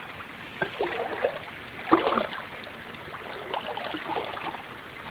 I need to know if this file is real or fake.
real